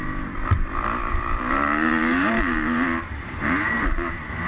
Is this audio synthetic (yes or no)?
yes